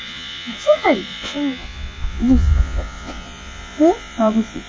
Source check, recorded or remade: remade